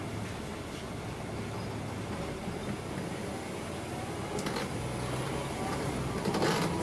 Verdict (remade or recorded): recorded